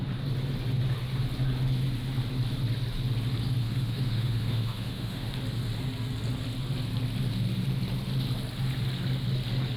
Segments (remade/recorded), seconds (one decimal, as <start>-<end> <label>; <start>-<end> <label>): 0.0-3.6 recorded; 3.6-5.3 remade; 5.3-9.8 recorded